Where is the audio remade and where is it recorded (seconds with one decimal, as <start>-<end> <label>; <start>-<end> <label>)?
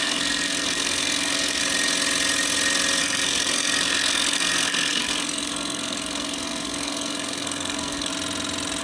0.0-1.6 remade; 1.6-3.0 recorded; 3.0-8.1 remade; 8.1-8.8 recorded